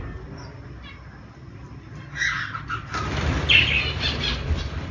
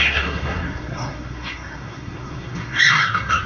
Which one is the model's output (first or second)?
second